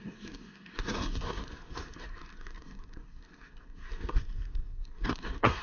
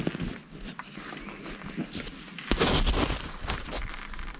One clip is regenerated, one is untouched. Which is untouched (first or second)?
second